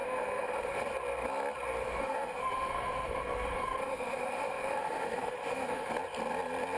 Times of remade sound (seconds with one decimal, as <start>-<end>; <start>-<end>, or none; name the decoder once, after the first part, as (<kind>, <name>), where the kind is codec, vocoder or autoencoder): 0.0-0.8 (autoencoder, DAC-VAE); 1.8-5.9